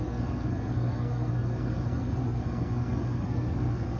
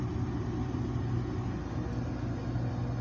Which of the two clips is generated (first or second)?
first